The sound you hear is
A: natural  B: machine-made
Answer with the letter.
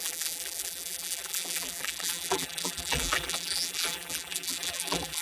B